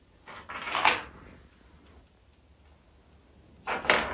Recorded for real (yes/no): yes